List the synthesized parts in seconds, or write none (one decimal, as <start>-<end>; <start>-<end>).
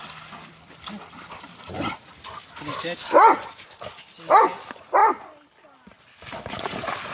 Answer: 5.0-6.0